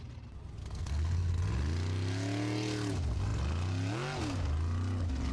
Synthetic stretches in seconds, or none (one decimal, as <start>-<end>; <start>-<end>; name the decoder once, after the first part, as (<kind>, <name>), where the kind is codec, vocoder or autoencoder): 0.6-1.3 (codec, SNAC)